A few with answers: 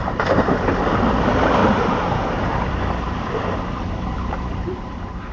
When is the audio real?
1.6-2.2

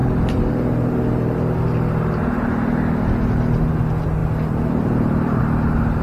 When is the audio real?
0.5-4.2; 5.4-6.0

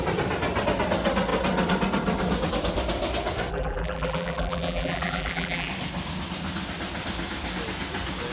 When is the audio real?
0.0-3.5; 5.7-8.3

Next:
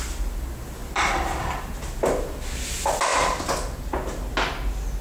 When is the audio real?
0.0-5.0

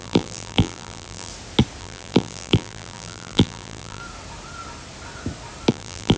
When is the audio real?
1.3-1.8; 4.0-5.7

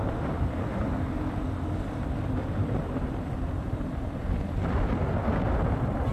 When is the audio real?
0.0-2.6; 4.2-6.1

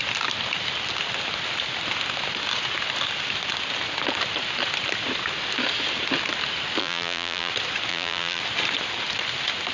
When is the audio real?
0.0-6.8; 7.5-7.9; 8.4-9.7

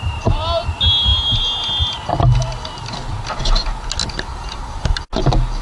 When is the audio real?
0.0-4.3; 5.0-5.6